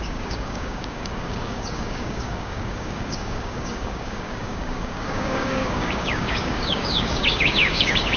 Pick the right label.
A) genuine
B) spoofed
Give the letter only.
B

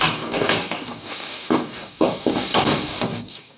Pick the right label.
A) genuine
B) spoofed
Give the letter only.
B